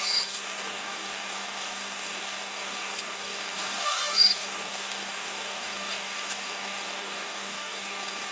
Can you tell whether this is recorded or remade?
remade